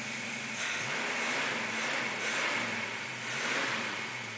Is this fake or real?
real